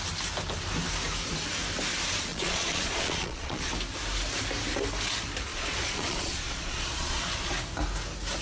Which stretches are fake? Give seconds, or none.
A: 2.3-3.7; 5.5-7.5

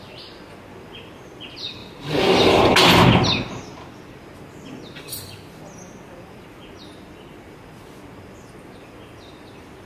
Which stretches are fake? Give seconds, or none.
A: none

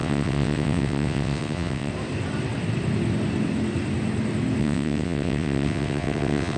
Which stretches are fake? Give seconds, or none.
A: 0.0-1.9; 4.6-6.6

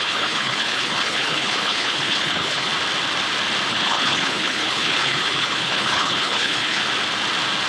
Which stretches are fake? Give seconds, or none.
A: 0.0-2.7; 3.7-6.8

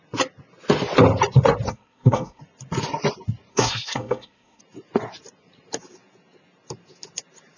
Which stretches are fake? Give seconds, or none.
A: 1.7-2.4; 3.5-4.6

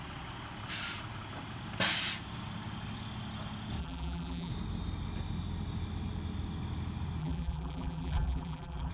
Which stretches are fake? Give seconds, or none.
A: 3.8-4.5; 7.2-8.9

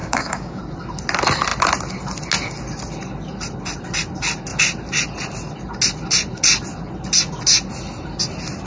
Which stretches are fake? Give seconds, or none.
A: 0.0-0.6

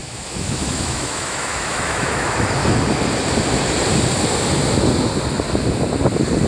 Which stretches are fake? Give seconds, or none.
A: 0.0-2.6